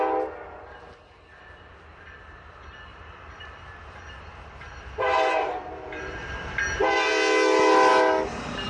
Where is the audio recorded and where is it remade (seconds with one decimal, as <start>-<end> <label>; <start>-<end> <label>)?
0.0-2.9 recorded; 2.9-7.1 remade; 7.1-8.7 recorded